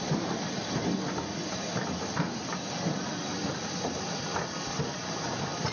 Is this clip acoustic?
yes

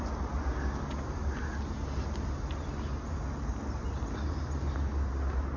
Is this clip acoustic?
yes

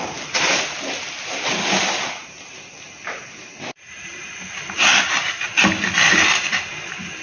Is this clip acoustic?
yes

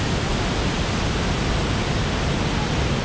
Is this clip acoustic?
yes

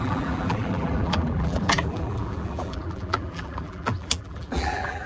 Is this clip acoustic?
no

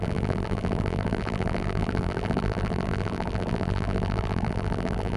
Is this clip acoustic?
no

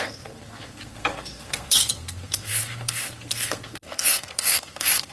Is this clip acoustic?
no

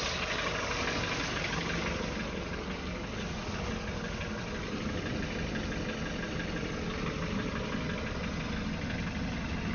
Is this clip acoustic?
yes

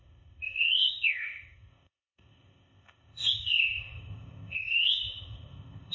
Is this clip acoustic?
no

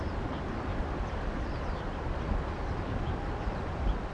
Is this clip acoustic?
yes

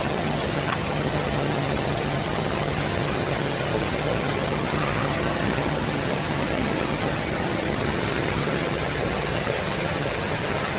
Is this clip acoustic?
no